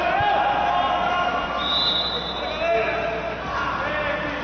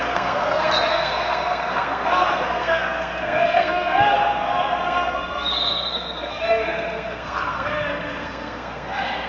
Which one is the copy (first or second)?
second